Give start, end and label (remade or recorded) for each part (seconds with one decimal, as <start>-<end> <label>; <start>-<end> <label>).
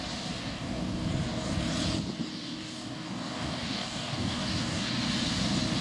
0.0-0.4 recorded; 0.4-1.1 remade; 1.1-2.3 recorded; 2.3-4.9 remade; 4.9-5.8 recorded